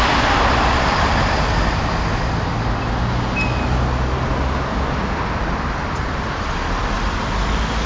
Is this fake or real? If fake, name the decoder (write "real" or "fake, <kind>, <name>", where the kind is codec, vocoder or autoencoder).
real